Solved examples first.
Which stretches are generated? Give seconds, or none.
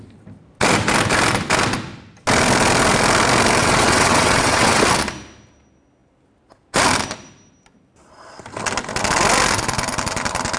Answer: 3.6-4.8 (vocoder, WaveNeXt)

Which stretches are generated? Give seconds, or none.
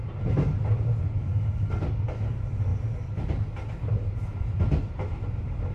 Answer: 1.2-1.9 (codec, DAC)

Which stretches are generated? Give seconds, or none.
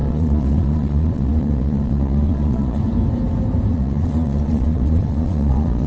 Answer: 0.0-2.8 (vocoder, Vocos); 3.7-5.9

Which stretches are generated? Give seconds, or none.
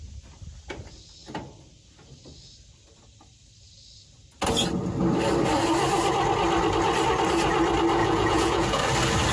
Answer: 8.0-8.8 (vocoder, Vocos)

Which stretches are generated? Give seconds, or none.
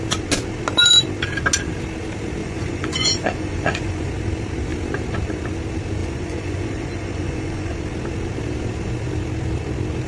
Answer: 2.4-4.1 (vocoder, Vocos); 6.0-7.8